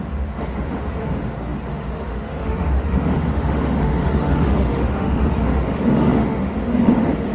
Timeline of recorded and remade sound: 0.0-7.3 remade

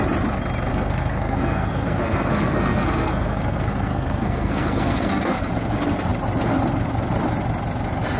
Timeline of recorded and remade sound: 0.0-0.7 recorded; 0.7-5.5 remade; 5.5-8.2 recorded

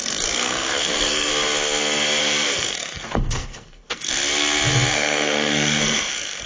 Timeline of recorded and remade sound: 0.0-1.3 remade; 1.3-2.2 recorded; 2.2-4.1 remade; 4.1-4.9 recorded; 4.9-6.5 remade